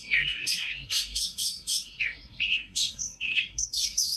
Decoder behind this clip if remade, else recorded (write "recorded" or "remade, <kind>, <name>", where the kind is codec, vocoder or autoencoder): remade, codec, SNAC